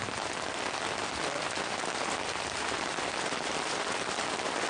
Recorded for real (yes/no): yes